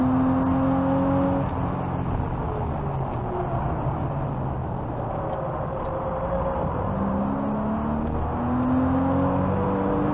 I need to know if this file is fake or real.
real